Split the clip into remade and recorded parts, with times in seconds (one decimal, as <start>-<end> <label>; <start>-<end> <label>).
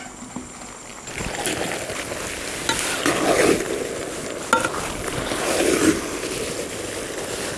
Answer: 0.0-7.6 recorded